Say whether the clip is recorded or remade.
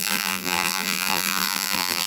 remade